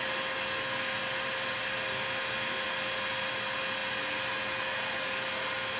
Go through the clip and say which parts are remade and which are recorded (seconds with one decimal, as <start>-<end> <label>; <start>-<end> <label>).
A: 0.0-5.8 recorded